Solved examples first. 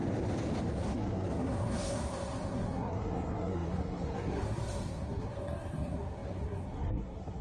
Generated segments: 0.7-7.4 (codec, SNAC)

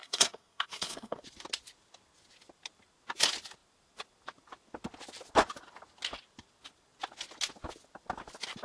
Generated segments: 0.0-1.2 (codec, SNAC)

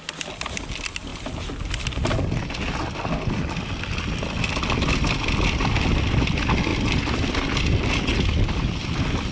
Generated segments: none

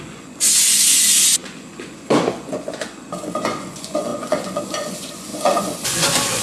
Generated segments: 0.0-6.4 (vocoder, Vocos)

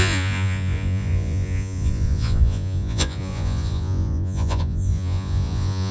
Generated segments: 0.0-5.9 (vocoder, Vocos)

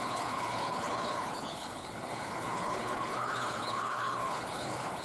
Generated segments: 0.0-5.0 (codec, HILCodec)